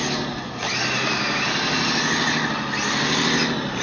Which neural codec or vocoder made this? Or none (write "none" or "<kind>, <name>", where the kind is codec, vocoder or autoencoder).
none